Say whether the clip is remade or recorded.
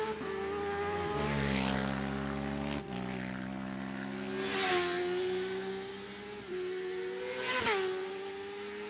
recorded